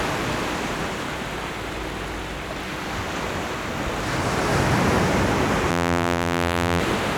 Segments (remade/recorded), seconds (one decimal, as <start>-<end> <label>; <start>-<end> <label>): 0.0-5.7 recorded; 5.7-6.8 remade; 6.8-7.2 recorded